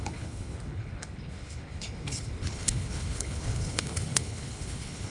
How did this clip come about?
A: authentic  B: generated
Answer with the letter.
B